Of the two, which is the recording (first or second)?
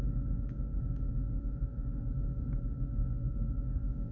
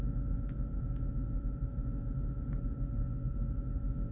second